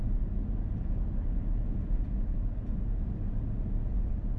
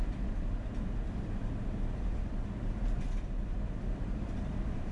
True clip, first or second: first